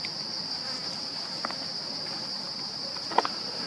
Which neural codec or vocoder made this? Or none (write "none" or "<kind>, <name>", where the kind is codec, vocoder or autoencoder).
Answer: none